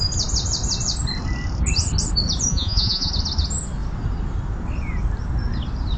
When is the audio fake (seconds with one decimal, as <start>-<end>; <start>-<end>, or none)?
2.5-3.1